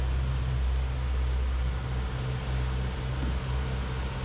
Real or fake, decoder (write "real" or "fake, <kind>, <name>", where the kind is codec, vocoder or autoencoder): real